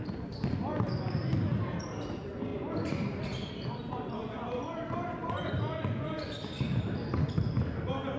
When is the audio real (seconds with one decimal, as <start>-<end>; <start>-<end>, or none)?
0.0-8.2